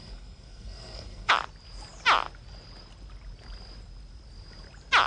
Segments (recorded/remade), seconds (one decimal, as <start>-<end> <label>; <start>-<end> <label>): 0.0-1.3 remade; 1.3-5.1 recorded